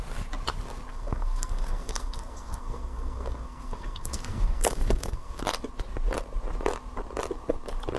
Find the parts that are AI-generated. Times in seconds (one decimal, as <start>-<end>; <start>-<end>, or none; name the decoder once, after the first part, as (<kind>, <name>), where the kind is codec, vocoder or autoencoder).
0.9-5.4 (codec, SNAC)